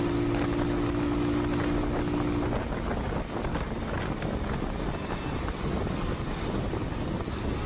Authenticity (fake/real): real